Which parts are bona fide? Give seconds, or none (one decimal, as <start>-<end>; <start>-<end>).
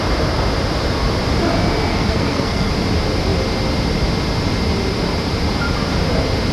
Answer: 0.0-1.9; 2.7-6.5